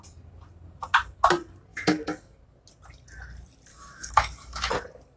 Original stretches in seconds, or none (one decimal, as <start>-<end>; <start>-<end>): 0.0-1.7; 2.4-3.7; 4.7-5.2